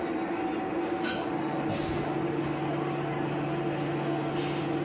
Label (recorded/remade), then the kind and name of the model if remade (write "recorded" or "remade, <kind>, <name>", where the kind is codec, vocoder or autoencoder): recorded